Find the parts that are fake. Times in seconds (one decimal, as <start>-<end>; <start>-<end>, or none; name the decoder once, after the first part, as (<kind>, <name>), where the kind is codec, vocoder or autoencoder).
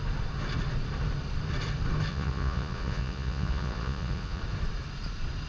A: 2.1-4.4 (vocoder, Vocos)